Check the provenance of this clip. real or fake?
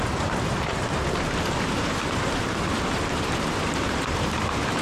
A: fake